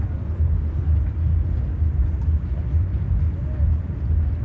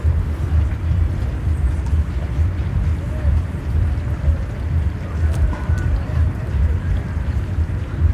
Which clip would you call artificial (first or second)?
second